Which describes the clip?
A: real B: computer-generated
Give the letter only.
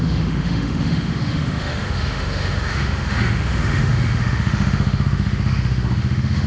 B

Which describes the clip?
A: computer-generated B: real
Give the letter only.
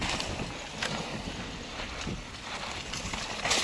B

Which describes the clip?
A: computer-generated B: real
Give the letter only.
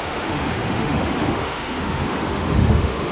A